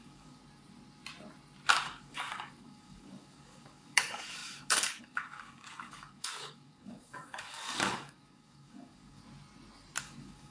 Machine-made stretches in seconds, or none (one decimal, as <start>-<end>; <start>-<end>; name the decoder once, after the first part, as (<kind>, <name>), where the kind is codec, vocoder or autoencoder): 0.0-0.4 (codec, DAC); 1.7-9.2; 10.0-10.5